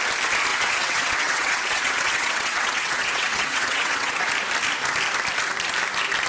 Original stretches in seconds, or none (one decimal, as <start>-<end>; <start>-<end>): 0.0-0.5; 4.3-6.3